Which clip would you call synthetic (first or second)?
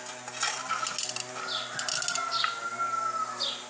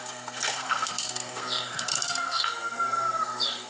second